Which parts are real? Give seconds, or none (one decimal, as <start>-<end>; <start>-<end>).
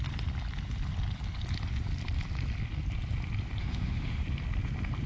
0.0-3.6; 4.2-5.1